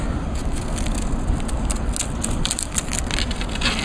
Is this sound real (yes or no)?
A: yes